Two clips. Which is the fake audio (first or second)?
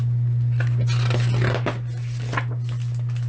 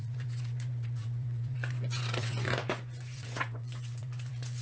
second